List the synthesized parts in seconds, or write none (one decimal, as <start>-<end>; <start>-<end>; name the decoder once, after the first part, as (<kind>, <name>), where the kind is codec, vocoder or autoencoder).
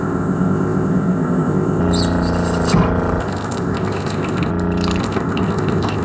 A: 0.0-1.8 (codec, ZipCodec); 3.2-4.5; 5.0-6.0